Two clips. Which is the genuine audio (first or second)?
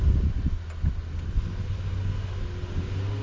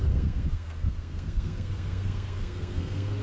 first